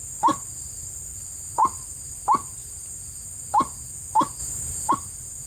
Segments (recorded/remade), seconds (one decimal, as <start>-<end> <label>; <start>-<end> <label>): 0.0-4.4 recorded; 4.4-4.9 remade; 4.9-5.5 recorded